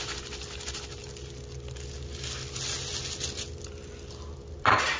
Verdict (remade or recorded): recorded